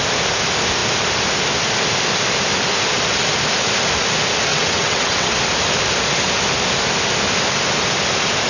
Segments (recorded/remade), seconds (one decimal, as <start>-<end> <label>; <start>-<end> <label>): 0.0-4.5 recorded; 4.5-5.3 remade; 5.3-8.5 recorded